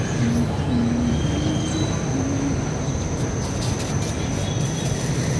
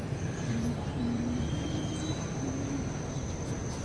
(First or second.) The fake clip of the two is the second